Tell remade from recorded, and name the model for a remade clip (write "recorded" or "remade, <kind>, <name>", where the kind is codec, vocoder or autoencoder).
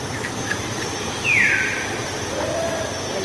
recorded